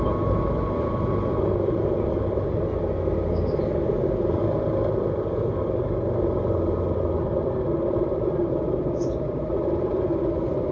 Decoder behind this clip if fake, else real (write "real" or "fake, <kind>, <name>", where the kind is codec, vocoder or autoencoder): real